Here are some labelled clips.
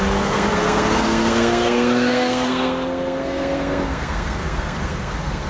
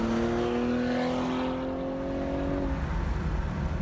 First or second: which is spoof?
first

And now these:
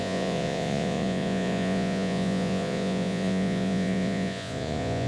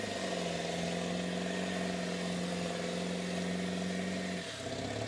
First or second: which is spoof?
first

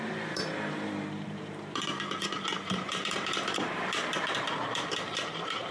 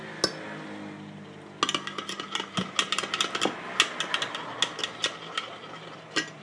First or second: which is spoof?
first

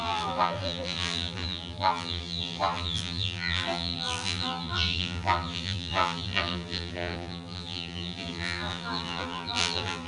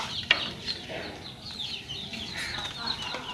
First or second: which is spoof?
first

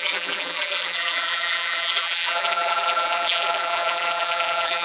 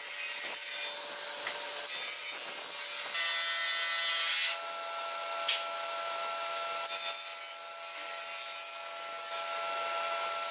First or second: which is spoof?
first